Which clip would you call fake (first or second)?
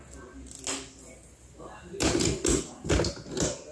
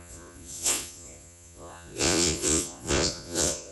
second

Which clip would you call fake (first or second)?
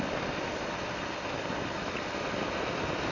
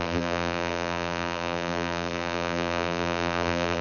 second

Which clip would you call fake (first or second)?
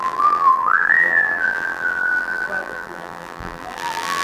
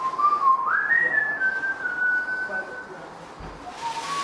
first